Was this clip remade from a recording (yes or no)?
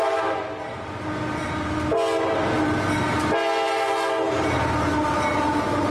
no